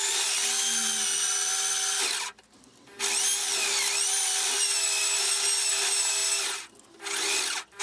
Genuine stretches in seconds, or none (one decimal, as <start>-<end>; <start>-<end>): 0.0-7.8